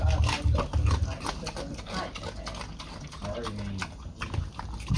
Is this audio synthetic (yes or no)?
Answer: no